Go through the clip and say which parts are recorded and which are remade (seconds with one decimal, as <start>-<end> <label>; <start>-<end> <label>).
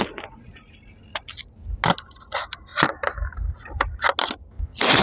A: 0.0-5.0 recorded